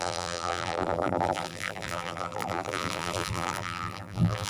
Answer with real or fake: fake